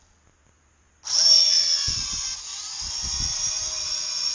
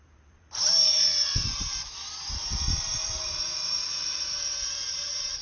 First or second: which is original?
first